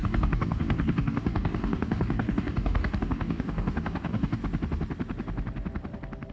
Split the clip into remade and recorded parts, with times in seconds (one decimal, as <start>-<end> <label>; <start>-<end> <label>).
0.0-4.4 remade; 4.4-6.3 recorded